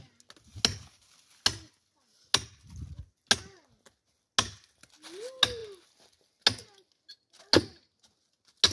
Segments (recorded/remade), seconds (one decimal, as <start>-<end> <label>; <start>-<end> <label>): 0.0-8.7 recorded